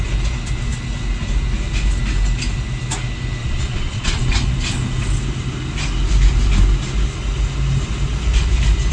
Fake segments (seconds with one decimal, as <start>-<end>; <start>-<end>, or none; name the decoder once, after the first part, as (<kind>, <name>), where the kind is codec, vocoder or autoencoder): 3.4-4.2 (vocoder, Vocos)